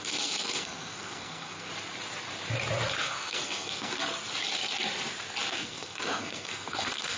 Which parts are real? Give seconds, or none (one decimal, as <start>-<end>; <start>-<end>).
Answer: 1.7-3.0; 4.0-5.5